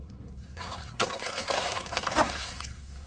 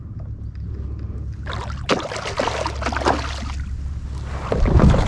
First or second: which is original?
second